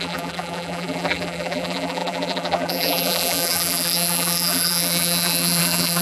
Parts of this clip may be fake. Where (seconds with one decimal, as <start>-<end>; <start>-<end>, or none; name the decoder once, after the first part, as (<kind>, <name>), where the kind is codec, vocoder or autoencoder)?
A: 0.0-6.0 (vocoder, BigVGAN v2)